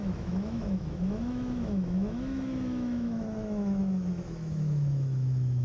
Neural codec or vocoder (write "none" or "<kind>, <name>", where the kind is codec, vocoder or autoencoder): autoencoder, DAC-VAE